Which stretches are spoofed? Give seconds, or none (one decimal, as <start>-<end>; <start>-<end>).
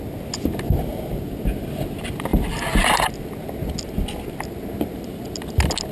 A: none